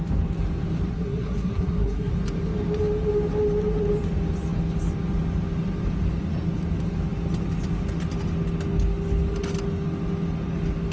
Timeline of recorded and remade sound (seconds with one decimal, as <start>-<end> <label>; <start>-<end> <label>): 0.0-0.9 recorded; 0.9-2.1 remade; 2.1-10.9 recorded